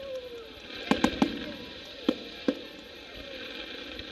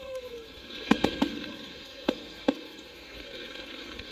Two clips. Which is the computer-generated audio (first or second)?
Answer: second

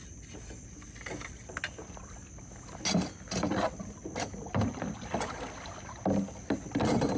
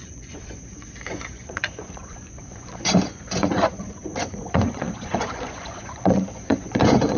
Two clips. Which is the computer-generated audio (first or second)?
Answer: second